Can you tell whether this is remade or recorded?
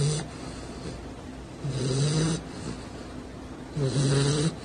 recorded